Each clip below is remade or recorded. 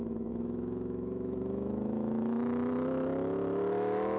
remade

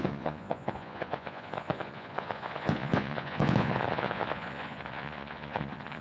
remade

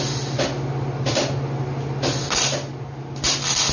recorded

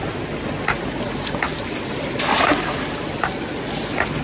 recorded